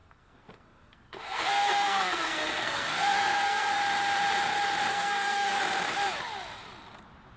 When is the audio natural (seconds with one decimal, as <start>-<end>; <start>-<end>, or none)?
3.8-4.9; 5.6-7.4